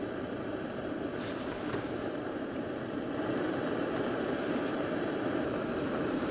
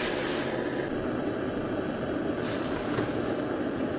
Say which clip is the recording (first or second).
second